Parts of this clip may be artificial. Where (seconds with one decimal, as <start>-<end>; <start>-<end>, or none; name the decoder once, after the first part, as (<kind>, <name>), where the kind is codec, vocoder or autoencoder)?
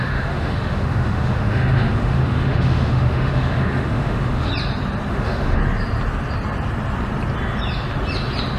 0.0-4.5 (autoencoder, DAC-VAE); 5.1-5.6